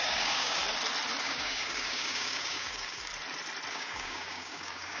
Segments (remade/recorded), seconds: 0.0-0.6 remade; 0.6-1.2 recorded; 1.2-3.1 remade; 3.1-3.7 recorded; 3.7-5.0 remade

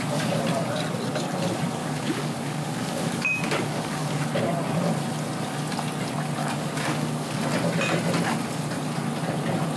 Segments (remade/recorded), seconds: 0.0-1.8 recorded; 1.8-4.2 remade; 4.2-6.4 recorded; 6.4-7.4 remade; 7.4-9.8 recorded

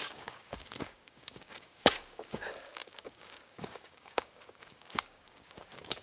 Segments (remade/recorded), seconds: 0.0-6.0 remade

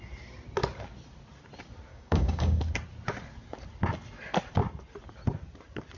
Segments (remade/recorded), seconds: 0.0-1.9 recorded; 1.9-2.6 remade; 2.6-6.0 recorded